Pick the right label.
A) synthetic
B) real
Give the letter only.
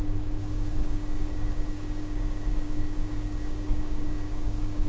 A